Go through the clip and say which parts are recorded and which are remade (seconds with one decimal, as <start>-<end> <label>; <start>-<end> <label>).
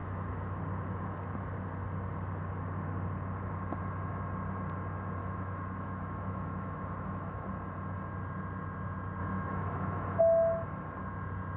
0.0-0.6 remade; 0.6-5.2 recorded; 5.2-7.5 remade; 7.5-9.2 recorded; 9.2-10.2 remade; 10.2-11.6 recorded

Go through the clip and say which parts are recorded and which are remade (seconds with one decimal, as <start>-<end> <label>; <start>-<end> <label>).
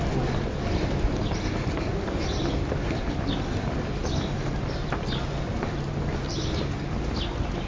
0.0-7.7 recorded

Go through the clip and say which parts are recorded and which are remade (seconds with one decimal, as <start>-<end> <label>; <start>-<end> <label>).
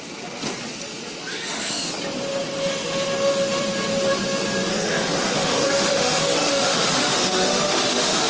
0.0-1.3 recorded; 1.3-1.9 remade; 1.9-4.7 recorded; 4.7-8.3 remade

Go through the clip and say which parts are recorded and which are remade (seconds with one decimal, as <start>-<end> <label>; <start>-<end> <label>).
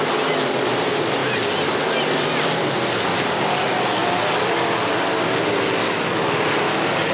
0.0-5.8 recorded; 5.8-6.4 remade; 6.4-7.1 recorded